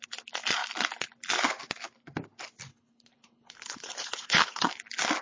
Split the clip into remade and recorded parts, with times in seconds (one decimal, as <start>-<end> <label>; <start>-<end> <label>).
0.0-2.7 recorded; 2.7-4.7 remade; 4.7-5.2 recorded